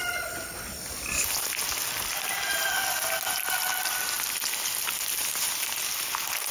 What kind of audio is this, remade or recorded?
recorded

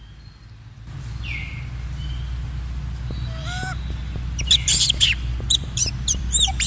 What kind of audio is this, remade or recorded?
remade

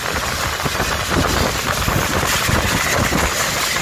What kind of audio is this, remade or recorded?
recorded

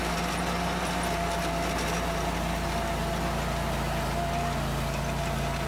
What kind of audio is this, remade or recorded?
recorded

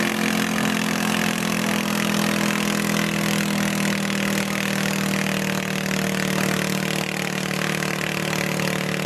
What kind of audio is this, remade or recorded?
recorded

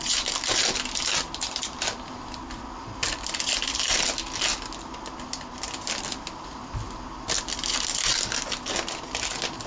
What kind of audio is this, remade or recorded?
recorded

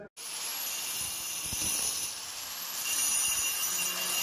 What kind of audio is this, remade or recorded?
recorded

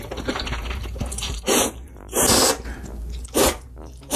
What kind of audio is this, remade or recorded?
remade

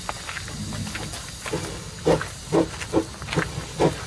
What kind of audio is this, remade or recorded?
recorded